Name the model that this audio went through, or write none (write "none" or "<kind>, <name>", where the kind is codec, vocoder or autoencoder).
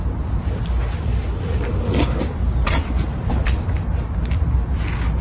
none